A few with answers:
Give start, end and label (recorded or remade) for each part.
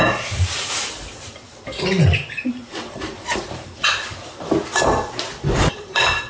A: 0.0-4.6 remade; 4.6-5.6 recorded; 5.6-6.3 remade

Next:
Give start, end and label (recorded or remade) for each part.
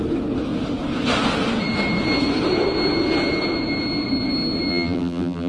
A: 0.0-4.7 recorded; 4.7-5.5 remade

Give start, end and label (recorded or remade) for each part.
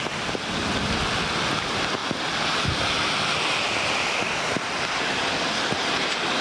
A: 0.0-6.4 recorded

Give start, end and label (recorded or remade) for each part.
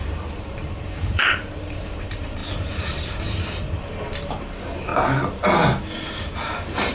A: 0.0-4.9 remade; 4.9-5.8 recorded; 5.8-6.9 remade